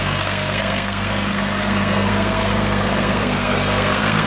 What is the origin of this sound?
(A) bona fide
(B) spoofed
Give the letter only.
B